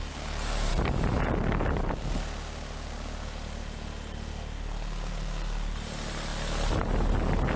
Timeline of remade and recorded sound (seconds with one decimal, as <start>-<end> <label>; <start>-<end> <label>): 0.0-7.6 recorded